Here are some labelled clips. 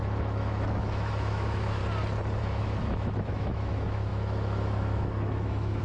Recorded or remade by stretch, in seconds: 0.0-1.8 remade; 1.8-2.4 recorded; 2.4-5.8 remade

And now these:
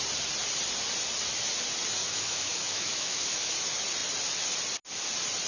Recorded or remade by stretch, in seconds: 0.0-2.0 recorded; 2.0-3.5 remade; 3.5-5.5 recorded

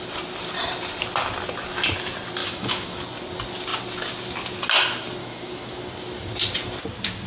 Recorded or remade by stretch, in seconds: 0.0-2.4 recorded; 2.4-3.0 remade; 3.0-5.2 recorded; 5.2-5.9 remade; 5.9-7.3 recorded

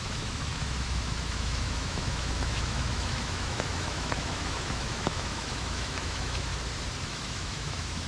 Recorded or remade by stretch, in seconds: 0.0-6.5 remade; 6.5-7.0 recorded; 7.0-8.1 remade

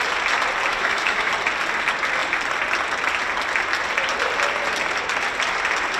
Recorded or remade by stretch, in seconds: 0.0-0.7 recorded; 0.7-1.3 remade; 1.3-6.0 recorded

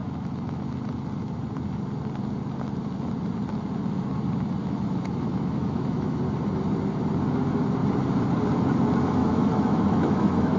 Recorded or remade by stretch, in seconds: 0.0-0.8 remade; 0.8-4.6 recorded; 4.6-6.2 remade; 6.2-9.2 recorded; 9.2-10.6 remade

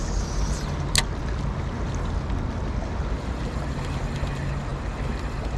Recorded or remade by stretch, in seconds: 0.0-5.6 recorded

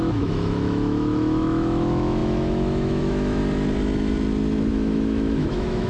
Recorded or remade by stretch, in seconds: 0.0-3.4 remade; 3.4-4.7 recorded; 4.7-5.9 remade